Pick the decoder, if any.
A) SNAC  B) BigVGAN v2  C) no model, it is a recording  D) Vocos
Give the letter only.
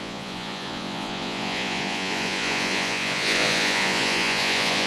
D